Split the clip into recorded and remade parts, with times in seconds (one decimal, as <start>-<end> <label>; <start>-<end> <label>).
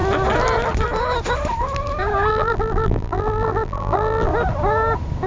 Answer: 0.0-2.3 recorded; 2.3-4.3 remade; 4.3-5.3 recorded